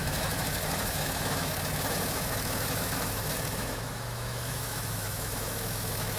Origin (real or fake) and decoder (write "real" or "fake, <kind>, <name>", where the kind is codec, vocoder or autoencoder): fake, autoencoder, DAC-VAE